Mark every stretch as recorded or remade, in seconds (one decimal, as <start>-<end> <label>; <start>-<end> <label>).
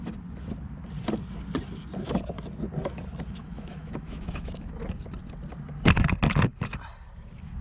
0.0-3.4 recorded; 3.4-4.8 remade; 4.8-7.6 recorded